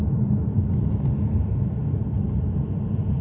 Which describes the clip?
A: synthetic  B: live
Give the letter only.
B